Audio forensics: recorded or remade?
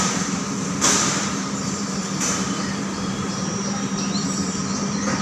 remade